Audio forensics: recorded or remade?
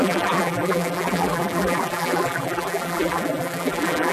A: remade